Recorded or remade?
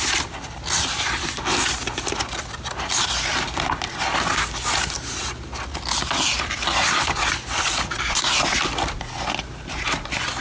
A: recorded